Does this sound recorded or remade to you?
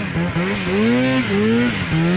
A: recorded